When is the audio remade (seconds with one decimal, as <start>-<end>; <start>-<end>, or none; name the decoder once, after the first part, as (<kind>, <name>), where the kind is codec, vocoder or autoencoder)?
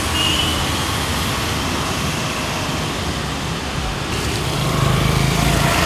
0.0-0.5 (vocoder, BigVGAN v2); 4.0-5.9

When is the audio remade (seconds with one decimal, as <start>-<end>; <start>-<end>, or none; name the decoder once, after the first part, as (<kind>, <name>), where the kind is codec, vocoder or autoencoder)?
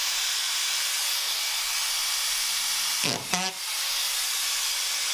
none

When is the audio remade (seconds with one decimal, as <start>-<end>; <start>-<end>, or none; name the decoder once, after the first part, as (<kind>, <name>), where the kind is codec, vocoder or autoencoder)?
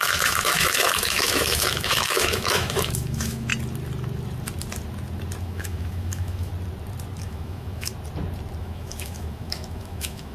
0.0-3.5 (autoencoder, DAC-VAE); 5.4-6.5; 7.2-7.9; 8.6-10.3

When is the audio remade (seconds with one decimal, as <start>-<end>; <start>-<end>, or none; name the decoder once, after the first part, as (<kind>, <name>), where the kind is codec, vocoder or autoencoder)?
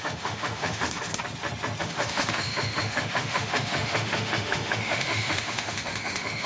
0.0-1.1 (autoencoder, DAC-VAE); 1.8-6.5